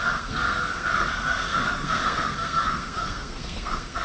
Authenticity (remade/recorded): remade